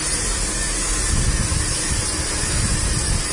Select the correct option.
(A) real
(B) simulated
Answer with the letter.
A